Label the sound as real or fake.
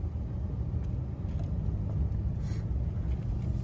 real